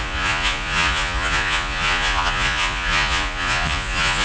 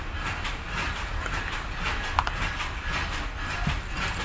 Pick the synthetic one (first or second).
first